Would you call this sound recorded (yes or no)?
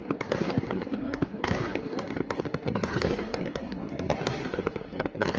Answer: no